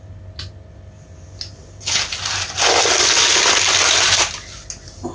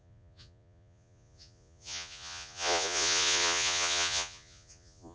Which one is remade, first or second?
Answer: second